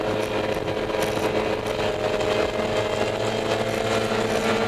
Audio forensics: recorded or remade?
recorded